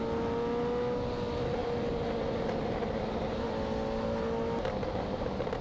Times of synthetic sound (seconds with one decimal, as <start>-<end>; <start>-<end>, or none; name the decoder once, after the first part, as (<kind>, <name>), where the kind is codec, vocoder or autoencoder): none